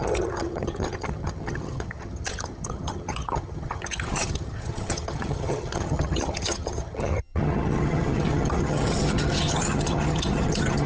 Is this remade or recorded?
remade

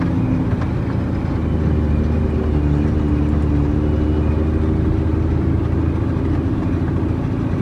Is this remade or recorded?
recorded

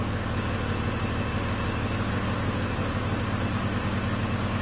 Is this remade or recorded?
recorded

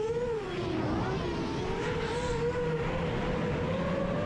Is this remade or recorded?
recorded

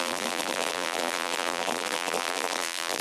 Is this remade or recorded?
remade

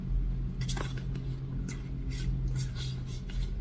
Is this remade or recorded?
recorded